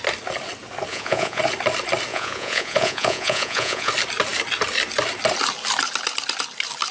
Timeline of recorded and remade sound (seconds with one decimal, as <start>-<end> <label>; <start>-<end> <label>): 0.0-0.9 recorded; 0.9-1.4 remade; 1.4-2.1 recorded; 2.1-3.9 remade; 3.9-6.9 recorded